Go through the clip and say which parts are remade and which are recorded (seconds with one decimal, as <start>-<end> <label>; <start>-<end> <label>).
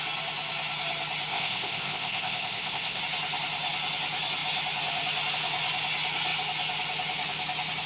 0.0-1.3 recorded; 1.3-3.0 remade; 3.0-7.9 recorded